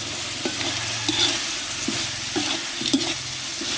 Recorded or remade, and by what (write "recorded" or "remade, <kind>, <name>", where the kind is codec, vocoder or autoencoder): recorded